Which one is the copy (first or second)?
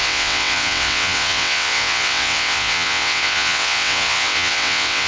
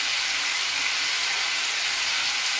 first